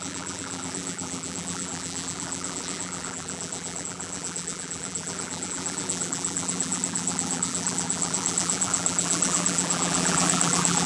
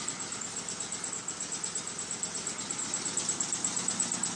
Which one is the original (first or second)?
second